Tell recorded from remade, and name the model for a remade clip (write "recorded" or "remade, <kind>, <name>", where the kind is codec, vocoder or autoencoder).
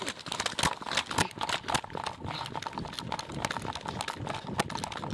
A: recorded